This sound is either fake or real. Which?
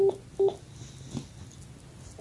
real